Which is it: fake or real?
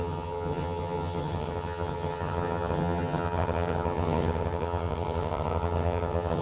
fake